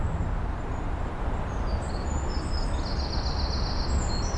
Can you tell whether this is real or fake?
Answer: real